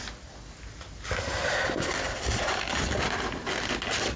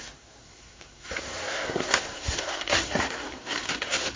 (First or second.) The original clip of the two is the first